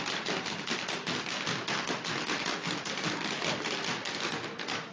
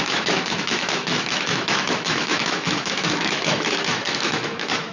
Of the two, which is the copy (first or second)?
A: second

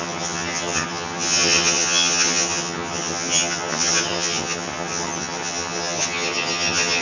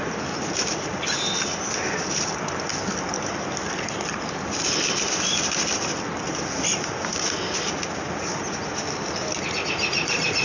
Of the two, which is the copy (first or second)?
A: first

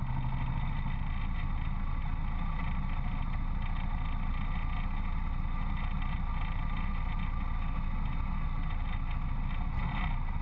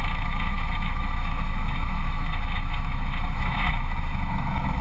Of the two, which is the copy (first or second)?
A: second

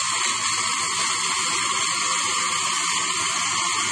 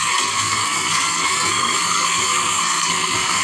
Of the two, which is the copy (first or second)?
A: second